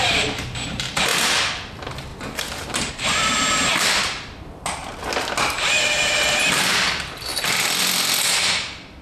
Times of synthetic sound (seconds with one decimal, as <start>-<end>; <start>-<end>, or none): 0.0-1.1; 1.7-2.1; 2.9-4.8; 6.6-9.0